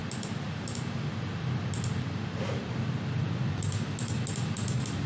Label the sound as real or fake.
real